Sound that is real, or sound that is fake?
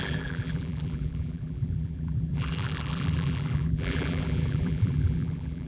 fake